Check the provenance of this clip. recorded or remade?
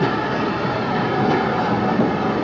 recorded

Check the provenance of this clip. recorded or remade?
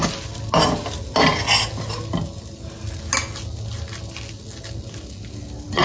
recorded